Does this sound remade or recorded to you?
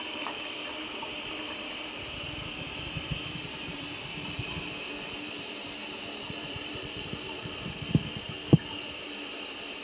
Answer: remade